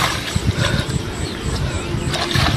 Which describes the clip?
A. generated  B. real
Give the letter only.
B